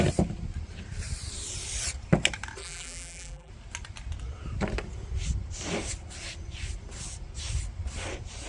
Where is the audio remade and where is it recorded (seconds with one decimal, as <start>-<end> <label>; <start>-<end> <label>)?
0.0-2.6 recorded; 2.6-3.5 remade; 3.5-8.5 recorded